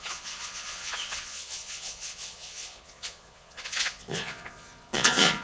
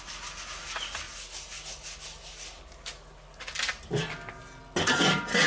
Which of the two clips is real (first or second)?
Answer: second